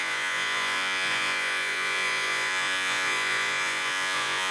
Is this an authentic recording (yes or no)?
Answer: no